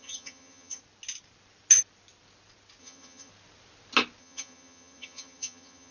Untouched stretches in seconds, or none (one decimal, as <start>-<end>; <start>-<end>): 0.8-2.8; 3.3-4.2